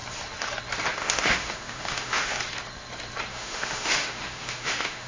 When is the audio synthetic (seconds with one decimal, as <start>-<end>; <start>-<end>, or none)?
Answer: 1.0-2.4; 3.3-5.1